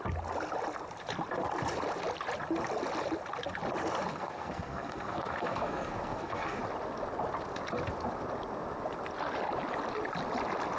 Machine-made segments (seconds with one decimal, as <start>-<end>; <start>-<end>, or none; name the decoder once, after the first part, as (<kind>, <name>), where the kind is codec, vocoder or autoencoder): 4.1-6.6 (codec, SNAC)